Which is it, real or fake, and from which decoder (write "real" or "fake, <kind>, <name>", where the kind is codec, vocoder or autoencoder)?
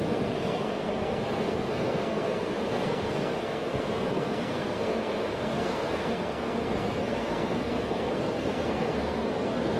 fake, codec, SNAC